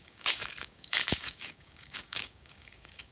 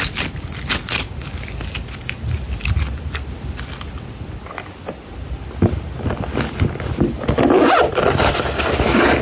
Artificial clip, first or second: first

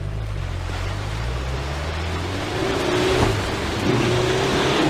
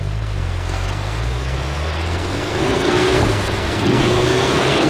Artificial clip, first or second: second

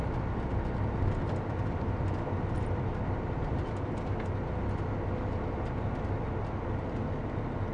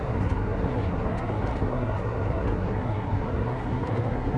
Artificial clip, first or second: second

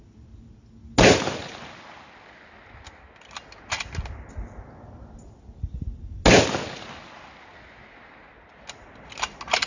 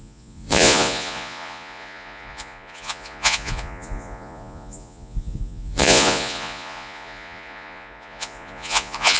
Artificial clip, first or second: second